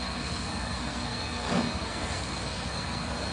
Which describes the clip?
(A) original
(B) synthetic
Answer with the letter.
B